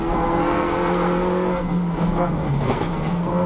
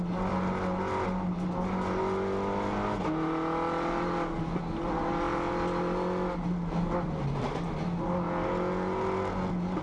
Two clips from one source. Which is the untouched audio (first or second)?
second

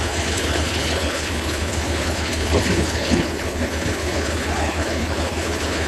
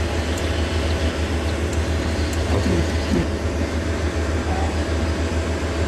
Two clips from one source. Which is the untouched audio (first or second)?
second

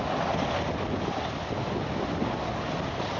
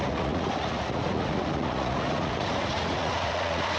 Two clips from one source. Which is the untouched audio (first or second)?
first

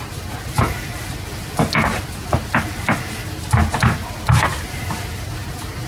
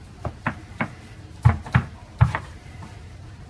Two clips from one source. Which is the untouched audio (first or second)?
first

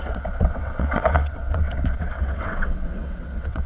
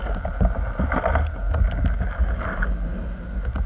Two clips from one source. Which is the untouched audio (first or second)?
second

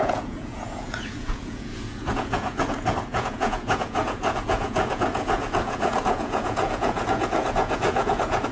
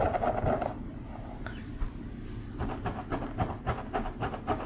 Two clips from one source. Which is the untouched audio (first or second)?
second